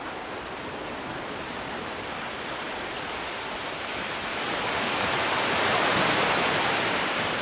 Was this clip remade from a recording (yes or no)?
yes